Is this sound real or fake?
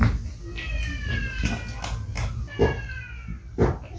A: real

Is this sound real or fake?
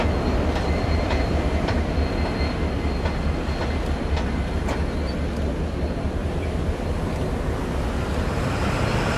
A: real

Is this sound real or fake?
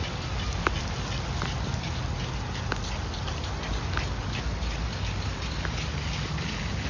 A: real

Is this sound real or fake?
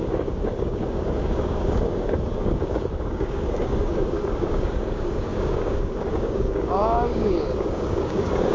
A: fake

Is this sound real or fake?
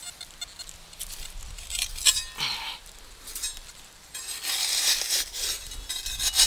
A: real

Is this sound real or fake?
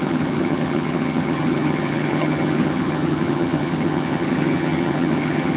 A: fake